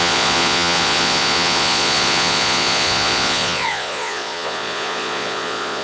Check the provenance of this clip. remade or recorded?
remade